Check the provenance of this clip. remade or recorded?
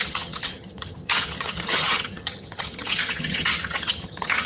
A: remade